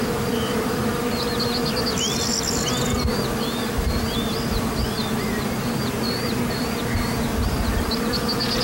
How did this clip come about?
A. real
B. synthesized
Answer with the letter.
A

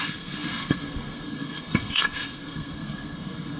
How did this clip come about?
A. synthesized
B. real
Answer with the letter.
A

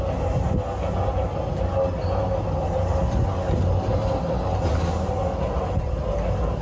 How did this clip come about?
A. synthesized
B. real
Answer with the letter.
B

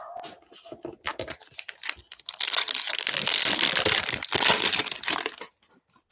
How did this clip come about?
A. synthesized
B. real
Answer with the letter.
B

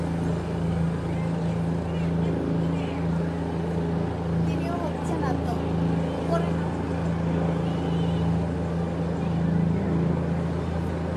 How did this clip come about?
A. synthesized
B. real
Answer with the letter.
B